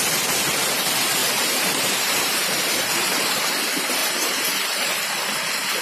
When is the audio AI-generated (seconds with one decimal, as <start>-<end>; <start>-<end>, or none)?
1.2-3.5; 4.0-4.9